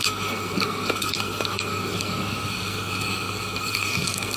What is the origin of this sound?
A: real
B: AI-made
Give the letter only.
B